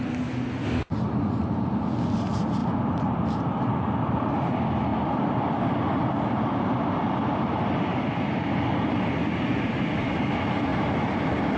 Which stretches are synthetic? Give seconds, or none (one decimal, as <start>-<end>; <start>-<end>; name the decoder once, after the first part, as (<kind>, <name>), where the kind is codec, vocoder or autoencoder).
4.9-8.0 (vocoder, BigVGAN v2); 10.7-11.6